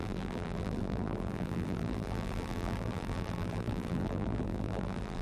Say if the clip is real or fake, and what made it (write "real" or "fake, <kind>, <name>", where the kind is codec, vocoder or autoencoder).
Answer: fake, vocoder, BigVGAN v2